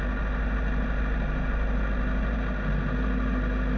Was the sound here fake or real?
real